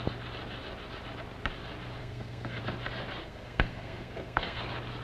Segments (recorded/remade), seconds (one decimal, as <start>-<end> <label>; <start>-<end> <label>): 0.0-2.0 recorded; 2.0-2.6 remade; 2.6-3.2 recorded; 3.2-4.6 remade; 4.6-5.0 recorded